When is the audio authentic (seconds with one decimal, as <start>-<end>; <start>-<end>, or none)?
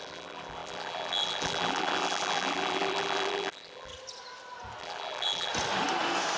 3.9-4.8; 5.5-6.4